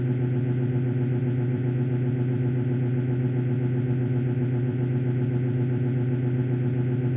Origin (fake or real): real